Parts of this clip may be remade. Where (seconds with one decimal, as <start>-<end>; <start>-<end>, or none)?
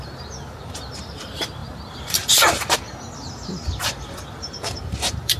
0.0-5.4